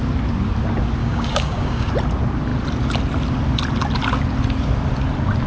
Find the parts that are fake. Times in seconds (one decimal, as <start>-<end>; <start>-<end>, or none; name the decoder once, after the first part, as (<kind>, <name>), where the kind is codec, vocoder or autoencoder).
1.0-1.9 (codec, DAC)